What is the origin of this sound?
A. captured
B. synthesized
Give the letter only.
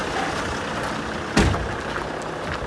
A